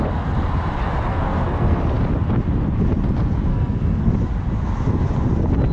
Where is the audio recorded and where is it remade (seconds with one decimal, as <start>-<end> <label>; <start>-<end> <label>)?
0.0-1.1 recorded; 1.1-1.8 remade; 1.8-3.5 recorded; 3.5-4.1 remade; 4.1-5.7 recorded